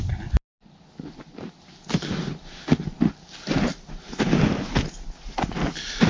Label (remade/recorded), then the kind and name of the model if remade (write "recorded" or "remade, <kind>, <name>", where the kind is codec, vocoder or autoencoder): recorded